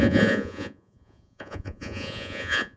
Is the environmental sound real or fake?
fake